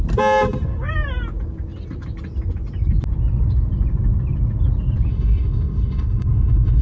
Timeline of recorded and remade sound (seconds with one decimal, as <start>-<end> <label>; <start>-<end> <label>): 0.0-5.1 recorded; 5.1-6.8 remade